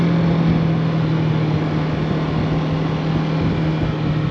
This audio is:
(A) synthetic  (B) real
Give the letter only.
B